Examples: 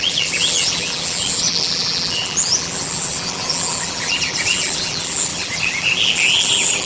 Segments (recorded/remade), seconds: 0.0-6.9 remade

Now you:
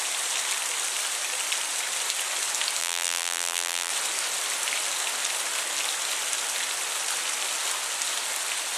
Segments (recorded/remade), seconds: 0.0-2.8 recorded; 2.8-3.9 remade; 3.9-8.8 recorded

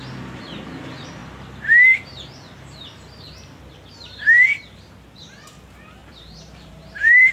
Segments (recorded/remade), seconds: 0.0-6.0 recorded; 6.0-7.3 remade

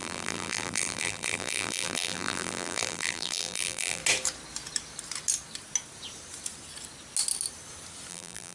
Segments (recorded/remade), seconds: 0.0-4.0 remade; 4.0-8.1 recorded; 8.1-8.5 remade

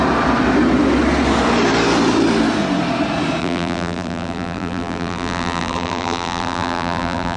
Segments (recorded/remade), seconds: 0.0-3.4 recorded; 3.4-7.4 remade

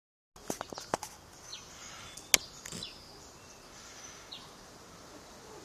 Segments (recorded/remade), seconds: 0.0-5.6 recorded

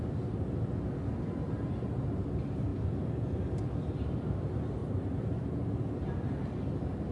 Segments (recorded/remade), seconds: 0.0-4.8 recorded; 4.8-6.1 remade; 6.1-7.1 recorded

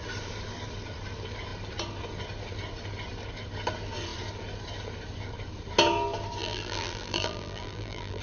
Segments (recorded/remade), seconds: 0.0-6.4 recorded; 6.4-8.2 remade